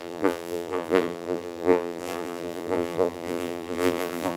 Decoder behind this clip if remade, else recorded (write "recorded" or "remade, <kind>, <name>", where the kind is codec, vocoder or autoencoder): remade, vocoder, BigVGAN v2